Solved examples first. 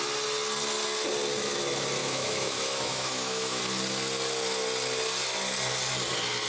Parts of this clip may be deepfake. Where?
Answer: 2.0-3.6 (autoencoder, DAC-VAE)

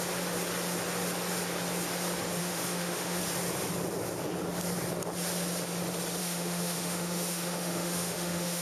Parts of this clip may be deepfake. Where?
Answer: 2.4-3.2 (autoencoder, DAC-VAE); 6.2-8.6

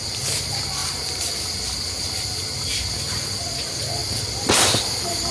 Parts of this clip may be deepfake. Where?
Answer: none

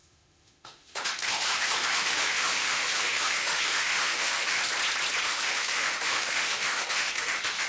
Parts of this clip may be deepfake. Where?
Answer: 0.0-4.6 (autoencoder, DAC-VAE); 5.2-7.7

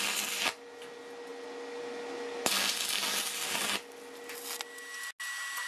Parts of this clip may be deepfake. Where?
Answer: none

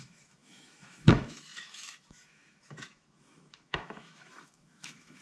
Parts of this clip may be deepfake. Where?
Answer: 0.0-5.2 (autoencoder, DAC-VAE)

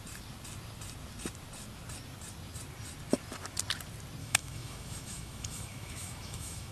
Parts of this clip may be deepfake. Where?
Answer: 4.2-6.7 (autoencoder, DAC-VAE)